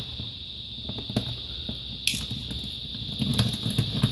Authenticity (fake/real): real